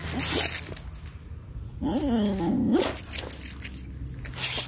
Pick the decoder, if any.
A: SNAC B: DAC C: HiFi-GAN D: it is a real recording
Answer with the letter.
D